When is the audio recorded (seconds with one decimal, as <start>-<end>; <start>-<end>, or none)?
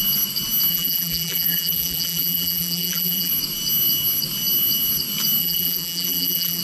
0.0-0.7; 3.3-5.4